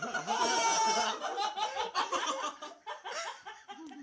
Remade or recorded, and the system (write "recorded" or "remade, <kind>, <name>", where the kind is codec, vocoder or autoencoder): recorded